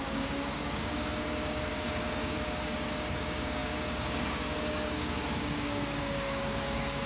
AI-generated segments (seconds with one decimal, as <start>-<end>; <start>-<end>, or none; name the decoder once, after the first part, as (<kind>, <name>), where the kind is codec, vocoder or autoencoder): 0.0-7.1 (codec, DAC)